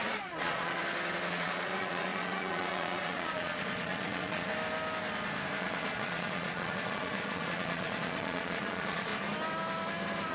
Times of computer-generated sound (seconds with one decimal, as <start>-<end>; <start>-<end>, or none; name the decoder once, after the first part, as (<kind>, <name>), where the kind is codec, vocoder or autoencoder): 0.0-0.8 (vocoder, Vocos); 1.3-4.5; 5.6-9.1